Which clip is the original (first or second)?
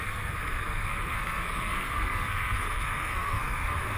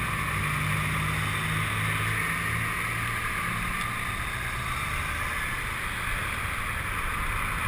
second